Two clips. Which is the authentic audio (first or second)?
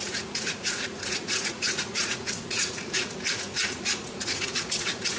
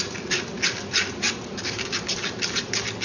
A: second